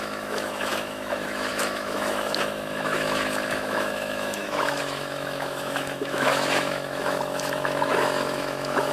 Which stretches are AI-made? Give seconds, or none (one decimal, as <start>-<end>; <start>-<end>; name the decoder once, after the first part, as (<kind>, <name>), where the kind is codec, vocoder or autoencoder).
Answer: 0.0-8.9 (autoencoder, DAC-VAE)